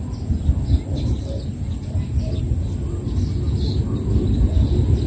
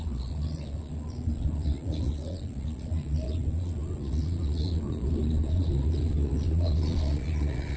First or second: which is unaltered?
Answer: first